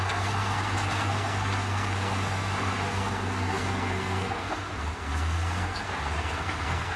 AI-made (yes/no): yes